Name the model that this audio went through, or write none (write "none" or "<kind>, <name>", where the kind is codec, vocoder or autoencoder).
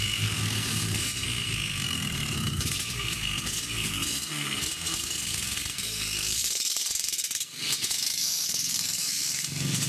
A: codec, SNAC